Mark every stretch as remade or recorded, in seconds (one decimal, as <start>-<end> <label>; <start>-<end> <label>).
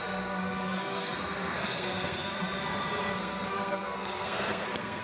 0.0-2.7 remade; 2.7-3.2 recorded; 3.2-5.0 remade